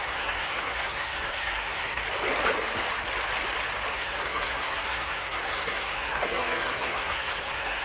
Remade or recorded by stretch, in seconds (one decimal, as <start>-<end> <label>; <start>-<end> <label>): 0.0-2.0 remade; 2.0-3.9 recorded; 3.9-7.8 remade